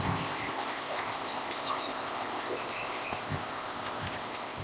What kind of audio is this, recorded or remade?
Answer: remade